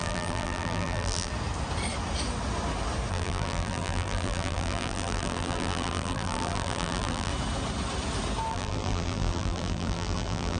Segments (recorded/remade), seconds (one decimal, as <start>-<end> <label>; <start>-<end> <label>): 0.0-1.3 remade; 1.3-3.1 recorded; 3.1-7.3 remade; 7.3-8.5 recorded; 8.5-10.6 remade